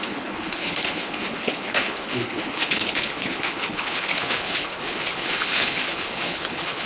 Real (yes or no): no